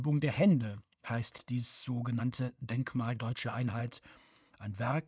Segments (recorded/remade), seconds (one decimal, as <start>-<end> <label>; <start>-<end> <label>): 0.0-1.4 remade; 1.4-2.2 recorded; 2.2-3.8 remade; 3.8-5.1 recorded